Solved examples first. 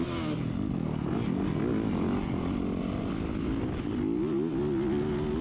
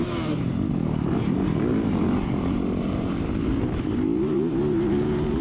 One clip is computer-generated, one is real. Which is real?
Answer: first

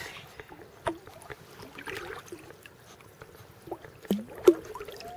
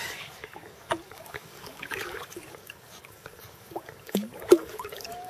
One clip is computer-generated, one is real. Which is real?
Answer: first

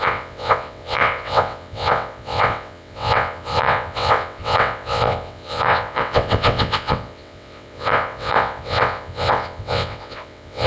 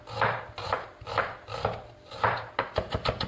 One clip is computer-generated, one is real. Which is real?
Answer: second